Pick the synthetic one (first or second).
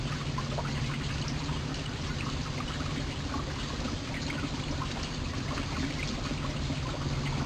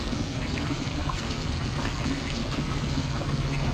second